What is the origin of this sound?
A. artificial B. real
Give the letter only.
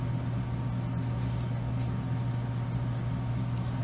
B